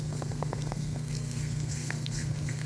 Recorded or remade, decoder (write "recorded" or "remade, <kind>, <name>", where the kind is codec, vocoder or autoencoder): remade, codec, SNAC